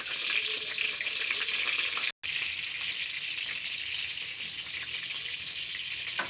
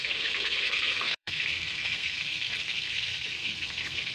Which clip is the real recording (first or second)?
first